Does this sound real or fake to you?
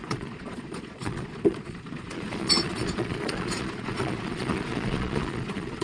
fake